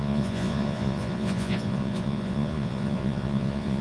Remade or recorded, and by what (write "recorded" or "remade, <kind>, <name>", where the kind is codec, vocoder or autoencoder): remade, vocoder, Vocos